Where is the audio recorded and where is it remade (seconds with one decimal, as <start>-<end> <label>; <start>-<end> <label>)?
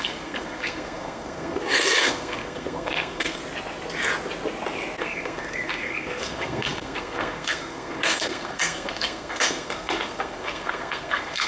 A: 0.0-3.4 remade; 3.4-5.0 recorded; 5.0-11.5 remade